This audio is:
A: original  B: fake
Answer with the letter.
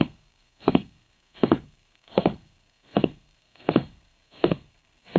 B